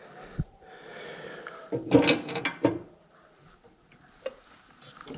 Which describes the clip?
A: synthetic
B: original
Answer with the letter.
B